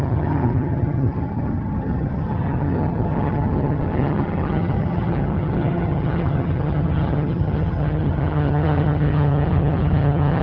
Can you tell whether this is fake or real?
fake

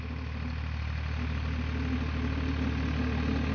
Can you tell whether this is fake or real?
real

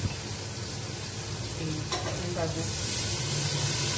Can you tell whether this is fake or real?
real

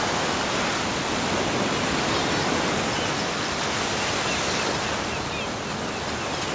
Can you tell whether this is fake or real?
real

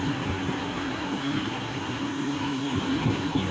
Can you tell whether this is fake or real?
fake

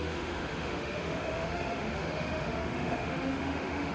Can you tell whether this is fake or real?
fake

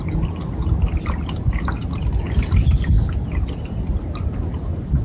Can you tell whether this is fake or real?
real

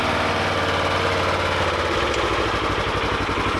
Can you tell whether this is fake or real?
real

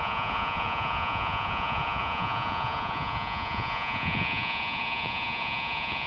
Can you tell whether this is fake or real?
fake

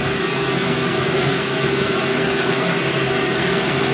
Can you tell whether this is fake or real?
fake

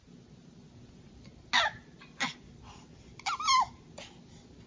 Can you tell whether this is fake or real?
real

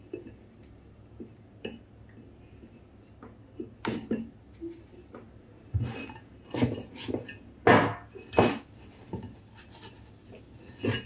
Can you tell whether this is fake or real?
real